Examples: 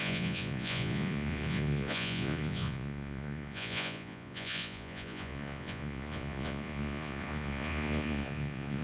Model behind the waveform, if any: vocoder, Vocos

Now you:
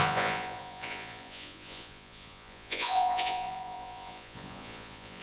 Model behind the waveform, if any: vocoder, Vocos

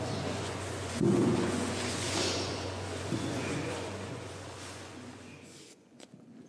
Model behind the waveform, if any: vocoder, Vocos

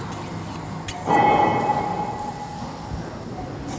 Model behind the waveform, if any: none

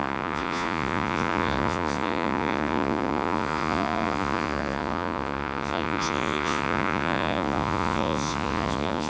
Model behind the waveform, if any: vocoder, Vocos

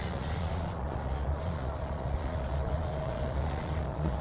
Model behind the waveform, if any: vocoder, Vocos